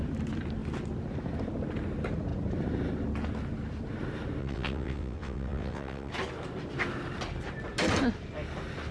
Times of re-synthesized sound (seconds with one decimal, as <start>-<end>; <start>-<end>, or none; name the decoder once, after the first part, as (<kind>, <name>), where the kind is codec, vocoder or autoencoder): 4.4-6.1 (vocoder, WaveNeXt)